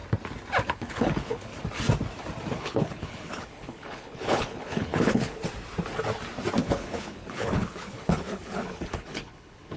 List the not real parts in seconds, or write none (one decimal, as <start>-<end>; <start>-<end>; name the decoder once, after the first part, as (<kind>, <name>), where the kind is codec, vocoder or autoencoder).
0.7-1.5 (codec, HILCodec); 2.5-5.4; 6.6-9.8